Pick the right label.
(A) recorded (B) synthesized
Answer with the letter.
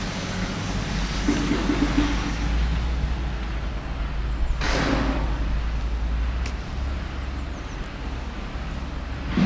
A